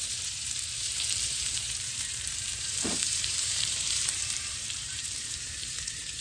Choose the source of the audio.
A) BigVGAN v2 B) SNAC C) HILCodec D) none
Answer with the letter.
A